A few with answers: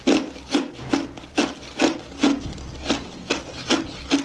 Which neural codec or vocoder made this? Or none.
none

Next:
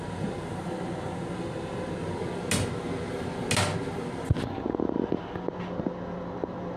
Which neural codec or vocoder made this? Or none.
none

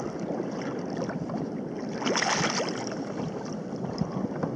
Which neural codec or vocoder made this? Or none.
none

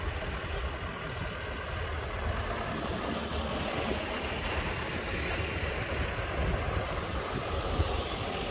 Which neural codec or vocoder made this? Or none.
none